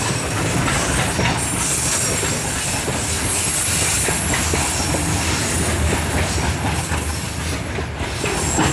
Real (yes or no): yes